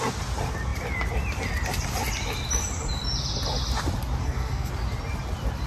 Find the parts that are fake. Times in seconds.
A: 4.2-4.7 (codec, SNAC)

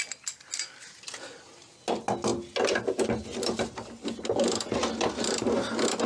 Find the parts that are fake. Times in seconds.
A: none

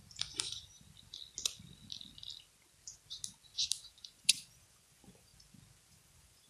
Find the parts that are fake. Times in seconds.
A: 3.9-5.3 (vocoder, Vocos); 5.9-6.5

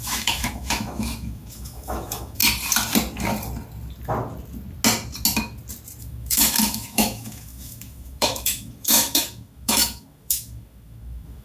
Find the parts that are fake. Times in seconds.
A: 0.0-2.4 (autoencoder, DAC-VAE); 6.0-11.4

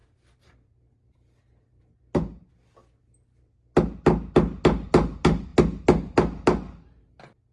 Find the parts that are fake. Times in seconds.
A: none

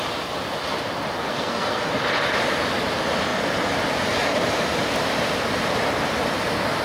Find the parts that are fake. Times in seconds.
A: 1.2-1.9 (codec, SNAC)

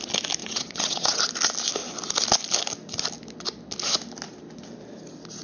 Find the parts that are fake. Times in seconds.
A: 0.4-1.2 (vocoder, WaveNeXt)